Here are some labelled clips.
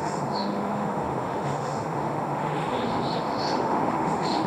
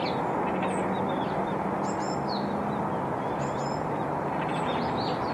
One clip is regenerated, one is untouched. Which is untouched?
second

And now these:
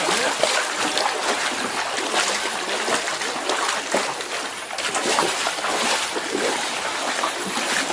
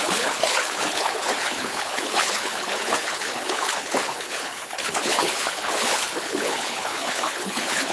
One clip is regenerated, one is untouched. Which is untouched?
first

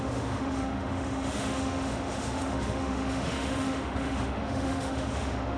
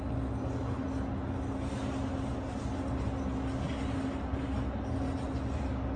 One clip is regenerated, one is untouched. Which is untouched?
second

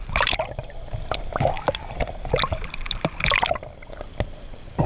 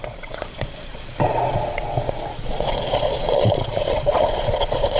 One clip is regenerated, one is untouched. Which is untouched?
first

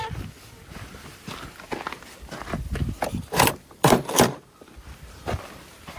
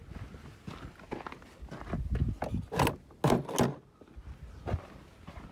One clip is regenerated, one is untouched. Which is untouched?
second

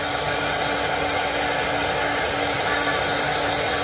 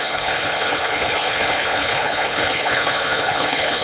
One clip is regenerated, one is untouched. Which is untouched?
first